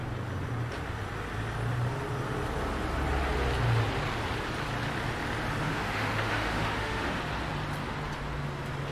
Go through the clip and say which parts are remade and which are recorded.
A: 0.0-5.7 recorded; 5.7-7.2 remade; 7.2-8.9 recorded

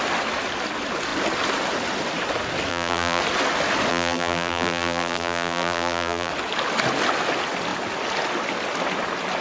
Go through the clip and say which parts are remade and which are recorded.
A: 0.0-2.7 recorded; 2.7-3.2 remade; 3.2-3.9 recorded; 3.9-6.3 remade; 6.3-9.4 recorded

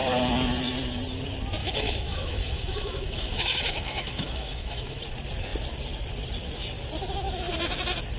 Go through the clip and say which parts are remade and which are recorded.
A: 0.0-1.6 recorded; 1.6-5.0 remade; 5.0-8.2 recorded

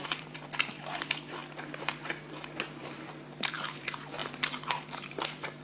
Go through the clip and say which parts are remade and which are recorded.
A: 0.0-1.4 remade; 1.4-2.8 recorded; 2.8-5.6 remade

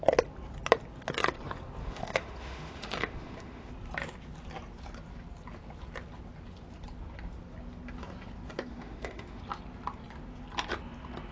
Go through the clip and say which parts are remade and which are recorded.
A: 0.0-1.8 recorded; 1.8-3.7 remade; 3.7-8.7 recorded; 8.7-9.4 remade; 9.4-11.3 recorded